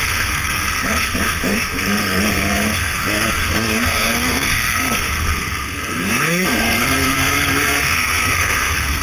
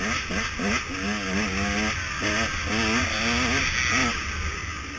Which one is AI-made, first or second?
first